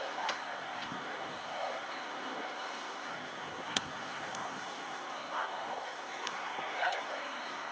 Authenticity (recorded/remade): remade